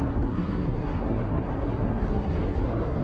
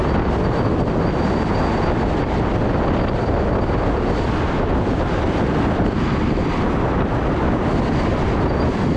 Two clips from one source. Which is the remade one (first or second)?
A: first